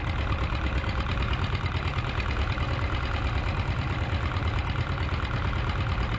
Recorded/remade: recorded